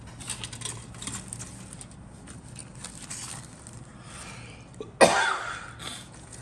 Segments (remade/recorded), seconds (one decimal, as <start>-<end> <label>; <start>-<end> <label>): 0.0-5.9 recorded; 5.9-6.4 remade